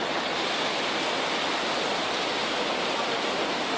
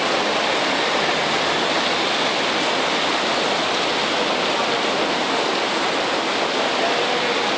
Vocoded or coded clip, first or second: first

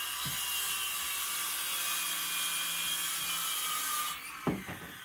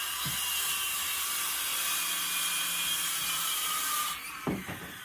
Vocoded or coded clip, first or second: second